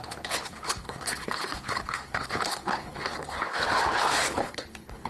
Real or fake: fake